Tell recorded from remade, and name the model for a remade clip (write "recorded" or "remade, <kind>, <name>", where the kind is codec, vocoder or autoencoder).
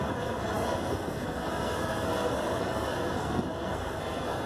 remade, codec, SNAC